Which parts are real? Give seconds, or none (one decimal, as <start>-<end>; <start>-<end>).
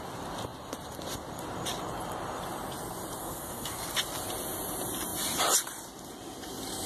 0.0-3.2; 3.9-6.9